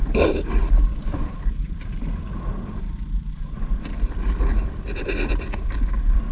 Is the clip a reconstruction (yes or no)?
no